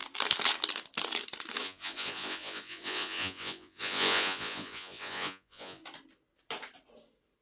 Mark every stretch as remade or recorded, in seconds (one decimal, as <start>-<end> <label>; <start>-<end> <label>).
0.0-1.6 recorded; 1.6-5.8 remade; 5.8-7.4 recorded